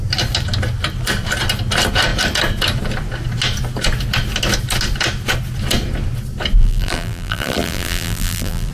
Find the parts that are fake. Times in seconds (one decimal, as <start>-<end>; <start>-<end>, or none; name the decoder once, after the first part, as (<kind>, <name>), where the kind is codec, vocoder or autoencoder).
6.6-8.7 (vocoder, BigVGAN v2)